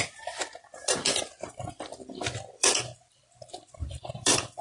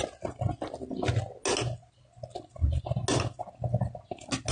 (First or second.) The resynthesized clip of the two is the first